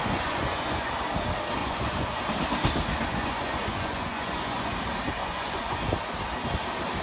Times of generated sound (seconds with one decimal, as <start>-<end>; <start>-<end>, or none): 0.0-0.9; 1.6-2.2; 3.1-4.7; 5.2-5.8